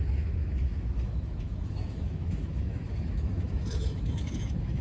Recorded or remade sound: remade